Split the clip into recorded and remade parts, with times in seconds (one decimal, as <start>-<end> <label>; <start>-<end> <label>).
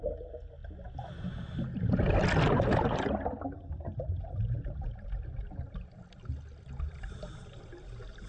0.0-8.3 recorded